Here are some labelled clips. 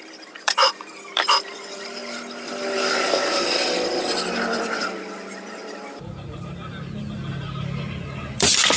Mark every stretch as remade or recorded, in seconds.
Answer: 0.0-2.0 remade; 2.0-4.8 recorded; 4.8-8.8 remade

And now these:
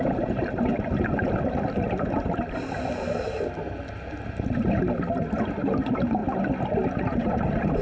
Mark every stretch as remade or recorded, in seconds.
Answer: 0.0-0.7 remade; 0.7-5.2 recorded; 5.2-6.2 remade; 6.2-7.0 recorded; 7.0-7.8 remade

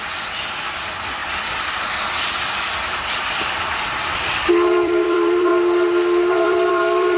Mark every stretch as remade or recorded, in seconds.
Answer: 0.0-5.5 remade; 5.5-6.3 recorded; 6.3-7.2 remade

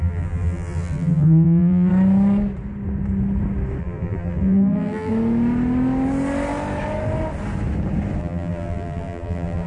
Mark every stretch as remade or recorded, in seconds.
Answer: 0.0-1.9 remade; 1.9-3.8 recorded; 3.8-5.1 remade; 5.1-8.2 recorded; 8.2-9.7 remade

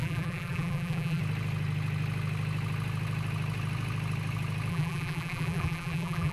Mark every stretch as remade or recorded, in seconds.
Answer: 0.0-1.2 remade; 1.2-4.7 recorded; 4.7-6.3 remade

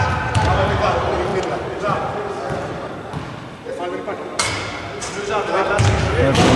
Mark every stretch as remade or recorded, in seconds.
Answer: 0.0-6.6 recorded